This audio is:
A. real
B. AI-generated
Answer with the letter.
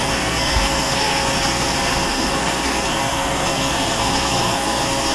B